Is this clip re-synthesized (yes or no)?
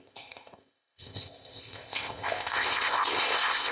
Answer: yes